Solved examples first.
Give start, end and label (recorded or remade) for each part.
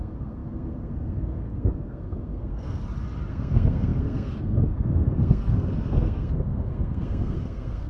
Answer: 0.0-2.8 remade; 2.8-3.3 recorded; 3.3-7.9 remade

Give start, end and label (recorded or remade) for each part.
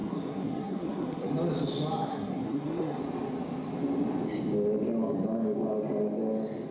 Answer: 0.0-1.3 remade; 1.3-2.1 recorded; 2.1-3.0 remade; 3.0-6.7 recorded